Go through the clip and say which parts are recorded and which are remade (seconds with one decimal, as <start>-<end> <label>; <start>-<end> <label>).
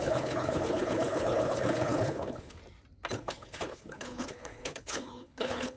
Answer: 0.0-2.6 remade; 2.6-3.1 recorded; 3.1-5.8 remade